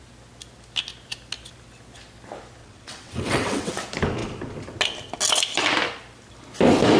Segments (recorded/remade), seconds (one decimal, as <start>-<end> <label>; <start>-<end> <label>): 0.0-2.6 recorded; 2.6-3.7 remade; 3.7-7.0 recorded

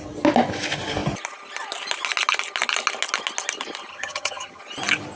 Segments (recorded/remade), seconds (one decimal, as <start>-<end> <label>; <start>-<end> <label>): 0.0-3.9 recorded; 3.9-4.6 remade; 4.6-5.2 recorded

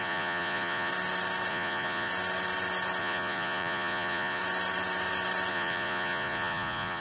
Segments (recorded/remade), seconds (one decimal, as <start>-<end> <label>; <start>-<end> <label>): 0.0-0.9 remade; 0.9-1.5 recorded; 1.5-2.1 remade; 2.1-3.0 recorded; 3.0-4.4 remade; 4.4-5.5 recorded; 5.5-7.0 remade

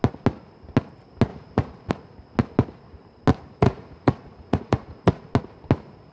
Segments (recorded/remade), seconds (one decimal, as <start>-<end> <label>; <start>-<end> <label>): 0.0-1.3 recorded; 1.3-1.9 remade; 1.9-3.3 recorded; 3.3-5.3 remade; 5.3-6.1 recorded

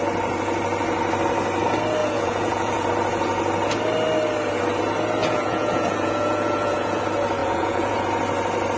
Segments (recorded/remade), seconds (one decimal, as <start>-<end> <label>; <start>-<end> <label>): 0.0-2.0 recorded; 2.0-2.9 remade; 2.9-5.2 recorded; 5.2-7.0 remade; 7.0-7.4 recorded; 7.4-8.0 remade; 8.0-8.8 recorded

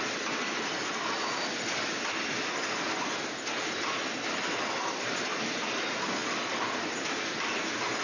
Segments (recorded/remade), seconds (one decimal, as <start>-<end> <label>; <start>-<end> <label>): 0.0-8.0 recorded

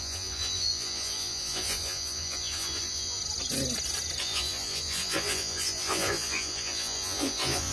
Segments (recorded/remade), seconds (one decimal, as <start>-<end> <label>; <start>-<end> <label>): 0.0-3.2 remade; 3.2-4.2 recorded; 4.2-7.7 remade